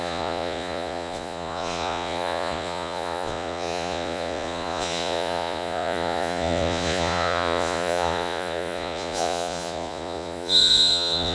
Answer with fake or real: fake